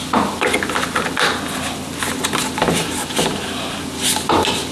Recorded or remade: recorded